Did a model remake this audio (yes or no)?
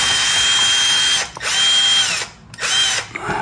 no